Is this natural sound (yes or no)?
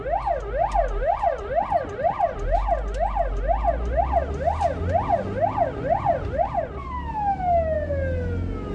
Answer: yes